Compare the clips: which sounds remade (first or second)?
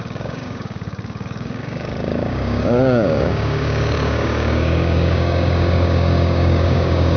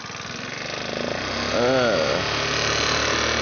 first